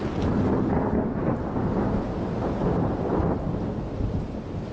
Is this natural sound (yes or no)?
yes